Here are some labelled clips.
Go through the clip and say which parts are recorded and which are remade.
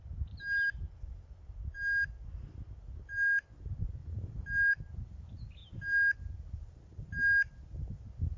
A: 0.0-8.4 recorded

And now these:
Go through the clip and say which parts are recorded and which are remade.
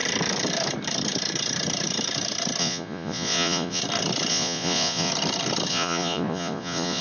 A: 0.0-2.6 recorded; 2.6-3.8 remade; 3.8-4.3 recorded; 4.3-5.1 remade; 5.1-5.7 recorded; 5.7-7.0 remade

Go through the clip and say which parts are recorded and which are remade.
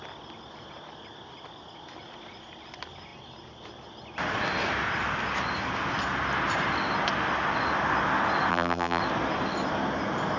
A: 0.0-8.5 recorded; 8.5-9.0 remade; 9.0-10.4 recorded